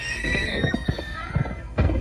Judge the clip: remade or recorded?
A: remade